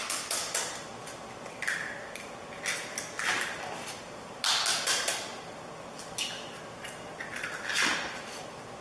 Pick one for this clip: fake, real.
real